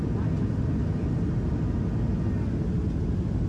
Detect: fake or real real